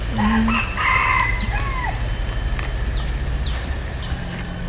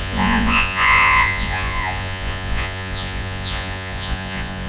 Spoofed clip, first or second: second